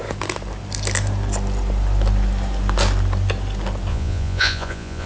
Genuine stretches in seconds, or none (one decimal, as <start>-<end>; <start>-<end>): 0.0-3.9